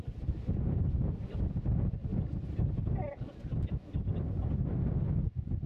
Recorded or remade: recorded